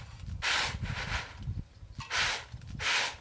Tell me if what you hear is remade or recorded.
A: recorded